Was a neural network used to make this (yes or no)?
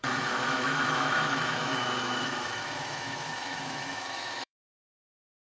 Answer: yes